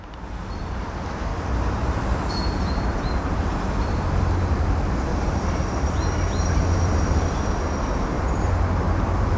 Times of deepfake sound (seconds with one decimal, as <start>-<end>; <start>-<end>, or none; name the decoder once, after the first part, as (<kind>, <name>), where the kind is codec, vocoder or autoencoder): 1.3-4.0 (vocoder, BigVGAN v2); 5.1-7.2